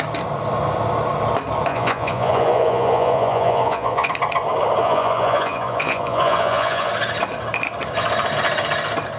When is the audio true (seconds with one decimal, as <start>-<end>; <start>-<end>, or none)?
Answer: 0.0-1.7; 4.1-4.8; 6.9-9.2